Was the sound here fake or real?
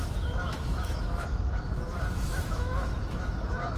fake